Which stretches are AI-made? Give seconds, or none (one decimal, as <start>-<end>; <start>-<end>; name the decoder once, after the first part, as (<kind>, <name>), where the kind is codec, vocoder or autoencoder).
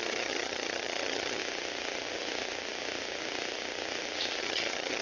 0.0-1.4 (vocoder, HiFi-GAN); 4.4-5.0